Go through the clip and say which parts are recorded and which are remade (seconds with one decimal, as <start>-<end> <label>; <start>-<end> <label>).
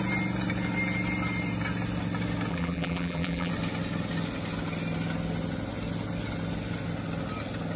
0.0-2.5 recorded; 2.5-3.5 remade; 3.5-7.8 recorded